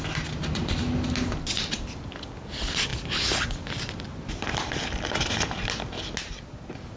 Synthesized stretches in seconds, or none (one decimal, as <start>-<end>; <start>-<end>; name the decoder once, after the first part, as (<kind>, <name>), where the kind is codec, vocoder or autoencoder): none